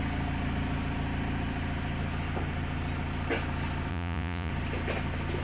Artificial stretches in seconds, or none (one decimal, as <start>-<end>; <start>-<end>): 3.9-4.5